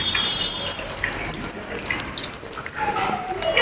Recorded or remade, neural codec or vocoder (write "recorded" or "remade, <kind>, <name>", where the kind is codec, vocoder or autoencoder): recorded